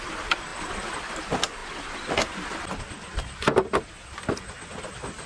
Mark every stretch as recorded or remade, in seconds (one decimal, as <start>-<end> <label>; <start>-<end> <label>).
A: 0.0-5.3 recorded